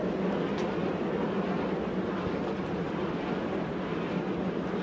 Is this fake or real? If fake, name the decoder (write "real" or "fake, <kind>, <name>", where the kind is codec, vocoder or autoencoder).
real